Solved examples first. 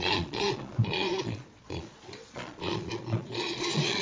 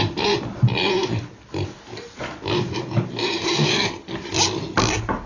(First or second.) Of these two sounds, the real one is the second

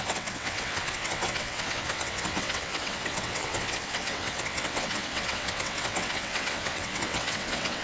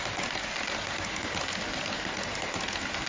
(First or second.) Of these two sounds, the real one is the second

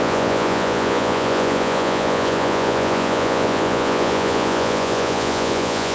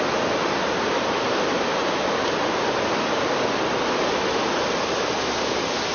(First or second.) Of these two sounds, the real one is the second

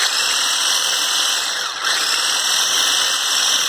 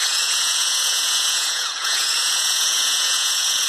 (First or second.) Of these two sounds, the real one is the first